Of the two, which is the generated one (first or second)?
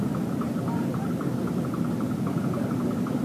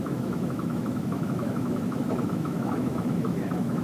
second